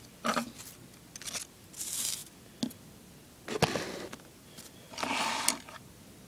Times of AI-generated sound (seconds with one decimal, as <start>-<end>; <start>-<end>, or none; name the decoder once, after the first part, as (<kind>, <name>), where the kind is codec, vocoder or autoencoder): none